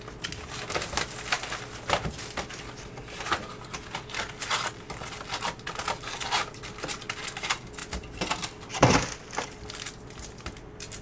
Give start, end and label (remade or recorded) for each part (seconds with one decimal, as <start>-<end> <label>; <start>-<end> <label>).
0.0-11.0 recorded

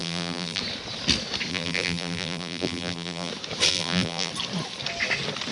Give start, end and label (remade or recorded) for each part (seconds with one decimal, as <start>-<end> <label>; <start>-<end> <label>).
0.0-0.6 remade; 0.6-1.5 recorded; 1.5-3.3 remade; 3.3-3.7 recorded; 3.7-4.3 remade; 4.3-5.5 recorded

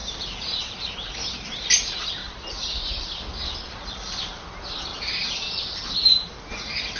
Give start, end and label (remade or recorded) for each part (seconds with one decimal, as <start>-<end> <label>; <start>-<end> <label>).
0.0-1.7 remade; 1.7-2.2 recorded; 2.2-3.0 remade; 3.0-4.9 recorded; 4.9-5.6 remade; 5.6-7.0 recorded

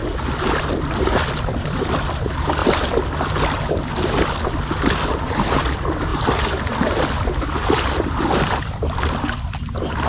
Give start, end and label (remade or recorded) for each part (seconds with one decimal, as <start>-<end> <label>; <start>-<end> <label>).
0.0-0.6 recorded; 0.6-2.6 remade; 2.6-3.4 recorded; 3.4-10.1 remade

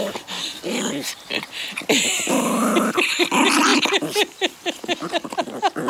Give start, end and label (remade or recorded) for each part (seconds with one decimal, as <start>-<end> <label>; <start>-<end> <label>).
0.0-5.9 recorded

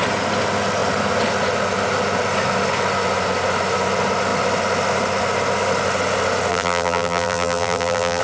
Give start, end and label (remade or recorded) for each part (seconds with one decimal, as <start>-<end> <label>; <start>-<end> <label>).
0.0-6.5 recorded; 6.5-8.2 remade